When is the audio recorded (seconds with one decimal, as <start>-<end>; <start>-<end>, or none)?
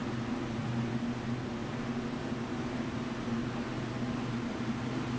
0.0-5.2